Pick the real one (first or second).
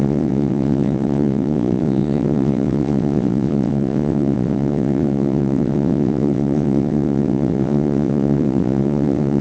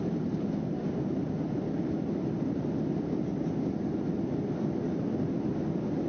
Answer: second